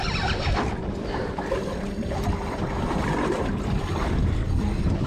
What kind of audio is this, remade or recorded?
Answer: remade